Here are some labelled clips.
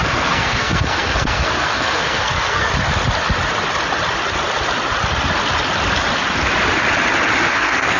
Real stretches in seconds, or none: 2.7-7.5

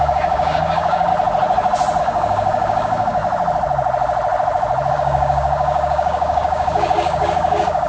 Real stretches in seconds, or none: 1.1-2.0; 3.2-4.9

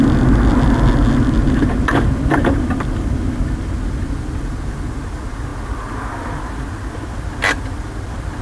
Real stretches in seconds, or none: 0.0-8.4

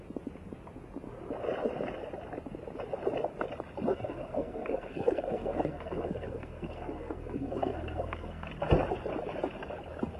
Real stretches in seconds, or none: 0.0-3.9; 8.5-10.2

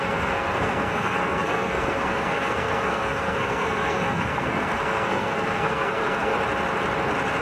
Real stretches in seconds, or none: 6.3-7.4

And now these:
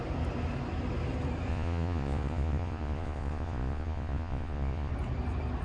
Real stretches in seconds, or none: 0.0-1.5; 4.9-5.6

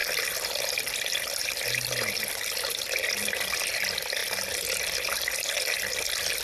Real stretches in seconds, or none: 2.8-6.4

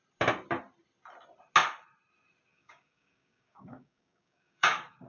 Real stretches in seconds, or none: 0.0-2.5